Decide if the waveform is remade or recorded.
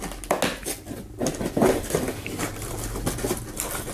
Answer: recorded